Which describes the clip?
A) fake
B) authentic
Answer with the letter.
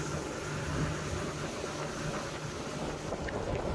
B